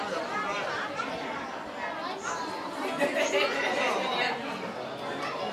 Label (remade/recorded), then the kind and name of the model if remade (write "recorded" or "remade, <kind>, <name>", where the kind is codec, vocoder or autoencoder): recorded